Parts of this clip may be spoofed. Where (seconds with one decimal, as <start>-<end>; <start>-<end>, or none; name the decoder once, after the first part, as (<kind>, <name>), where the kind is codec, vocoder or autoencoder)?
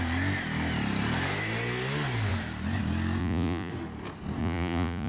3.2-3.7 (vocoder, Vocos); 4.4-5.1